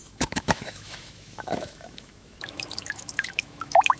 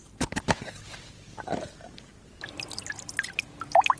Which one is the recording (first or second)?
second